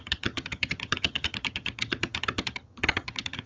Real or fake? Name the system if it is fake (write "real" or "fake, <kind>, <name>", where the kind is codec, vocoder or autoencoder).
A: fake, vocoder, HiFi-GAN